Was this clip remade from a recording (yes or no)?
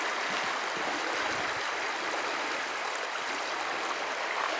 no